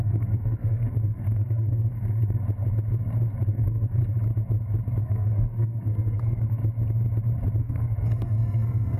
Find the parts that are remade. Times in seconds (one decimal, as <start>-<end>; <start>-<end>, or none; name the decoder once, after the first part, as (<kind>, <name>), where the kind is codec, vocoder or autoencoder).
0.0-2.4 (codec, SNAC); 3.5-4.0; 5.0-6.6; 7.6-9.0